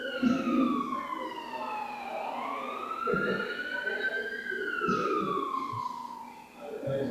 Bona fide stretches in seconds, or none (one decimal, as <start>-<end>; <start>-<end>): 0.0-7.1